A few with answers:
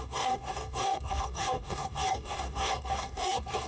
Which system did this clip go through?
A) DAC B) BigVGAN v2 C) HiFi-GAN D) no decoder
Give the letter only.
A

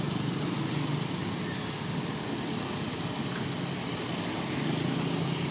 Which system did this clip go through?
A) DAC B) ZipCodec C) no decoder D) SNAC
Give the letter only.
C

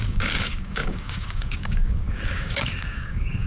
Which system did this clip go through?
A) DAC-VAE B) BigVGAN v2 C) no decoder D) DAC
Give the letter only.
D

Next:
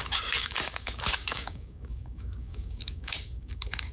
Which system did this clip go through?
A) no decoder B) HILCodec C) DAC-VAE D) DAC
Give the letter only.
D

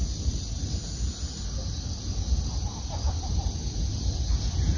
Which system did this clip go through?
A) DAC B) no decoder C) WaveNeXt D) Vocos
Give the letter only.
B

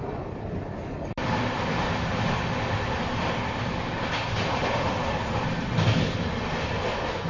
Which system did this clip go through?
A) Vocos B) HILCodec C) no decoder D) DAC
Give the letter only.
C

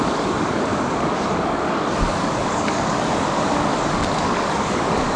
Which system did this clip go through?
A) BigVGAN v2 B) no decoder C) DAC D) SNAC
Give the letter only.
C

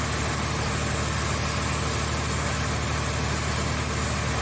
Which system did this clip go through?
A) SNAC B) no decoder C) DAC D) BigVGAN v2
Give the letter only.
B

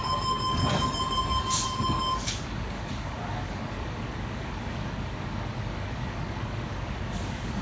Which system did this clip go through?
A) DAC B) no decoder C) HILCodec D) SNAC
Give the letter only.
A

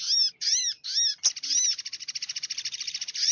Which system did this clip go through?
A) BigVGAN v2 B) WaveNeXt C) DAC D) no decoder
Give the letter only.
D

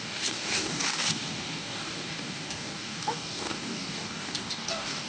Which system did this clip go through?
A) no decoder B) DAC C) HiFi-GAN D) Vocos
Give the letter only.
B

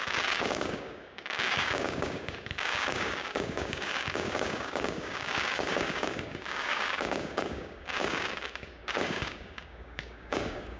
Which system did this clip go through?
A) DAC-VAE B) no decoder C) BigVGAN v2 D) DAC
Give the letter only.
D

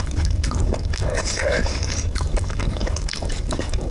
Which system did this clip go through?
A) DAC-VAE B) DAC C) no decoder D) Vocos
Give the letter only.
B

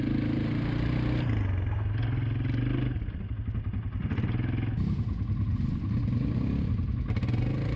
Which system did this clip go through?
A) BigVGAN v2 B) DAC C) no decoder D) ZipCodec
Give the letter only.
C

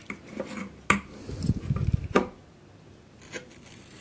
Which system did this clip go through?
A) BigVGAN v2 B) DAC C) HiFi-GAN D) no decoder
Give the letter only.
D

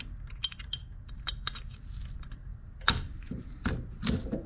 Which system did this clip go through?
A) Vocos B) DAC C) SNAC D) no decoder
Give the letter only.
D